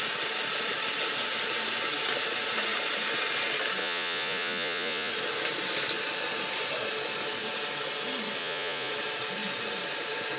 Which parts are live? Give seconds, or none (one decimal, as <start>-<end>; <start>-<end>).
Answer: 0.0-3.8; 5.1-8.4; 8.9-10.4